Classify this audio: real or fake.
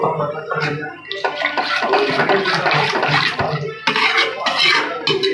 real